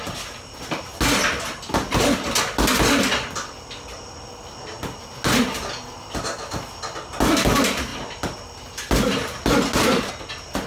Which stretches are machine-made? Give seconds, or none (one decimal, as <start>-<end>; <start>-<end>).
none